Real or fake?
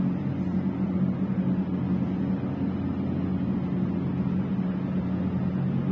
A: real